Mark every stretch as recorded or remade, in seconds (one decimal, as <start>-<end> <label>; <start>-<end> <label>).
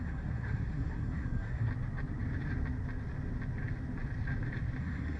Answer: 0.0-1.7 remade; 1.7-4.8 recorded; 4.8-5.2 remade